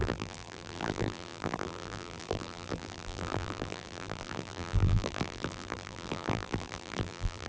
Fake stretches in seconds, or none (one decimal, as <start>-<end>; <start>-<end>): 0.0-7.5